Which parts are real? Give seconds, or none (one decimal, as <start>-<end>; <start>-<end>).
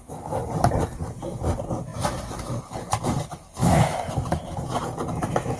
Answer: 0.0-3.6; 4.1-5.6